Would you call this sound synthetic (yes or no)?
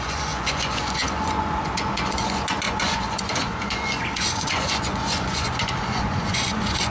yes